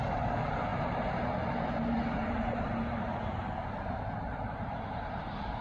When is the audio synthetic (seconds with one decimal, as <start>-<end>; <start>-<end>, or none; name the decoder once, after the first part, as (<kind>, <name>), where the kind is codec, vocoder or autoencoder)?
0.0-5.6 (vocoder, BigVGAN v2)